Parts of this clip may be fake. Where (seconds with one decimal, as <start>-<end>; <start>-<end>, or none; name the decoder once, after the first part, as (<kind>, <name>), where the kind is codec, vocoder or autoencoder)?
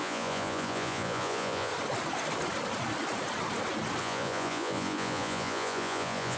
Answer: 0.0-1.7 (vocoder, Vocos); 4.0-6.4